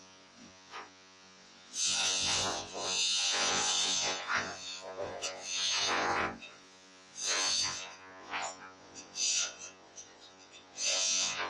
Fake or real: fake